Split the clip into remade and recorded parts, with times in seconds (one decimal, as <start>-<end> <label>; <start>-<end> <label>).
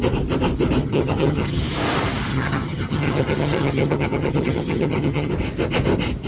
0.0-0.8 recorded; 0.8-1.6 remade; 1.6-2.3 recorded; 2.3-5.3 remade; 5.3-6.3 recorded